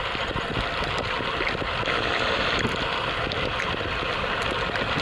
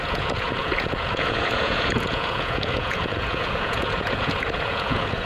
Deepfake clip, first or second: second